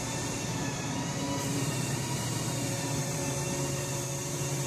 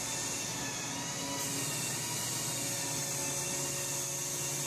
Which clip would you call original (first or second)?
second